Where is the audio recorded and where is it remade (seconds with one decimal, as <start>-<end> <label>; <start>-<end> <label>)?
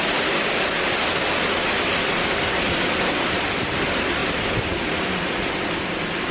0.0-4.2 recorded; 4.2-5.8 remade; 5.8-6.3 recorded